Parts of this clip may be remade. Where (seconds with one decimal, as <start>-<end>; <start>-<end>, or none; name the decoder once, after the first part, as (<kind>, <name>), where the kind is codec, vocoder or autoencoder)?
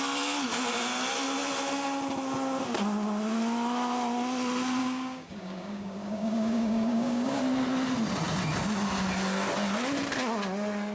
4.8-7.4 (codec, DAC)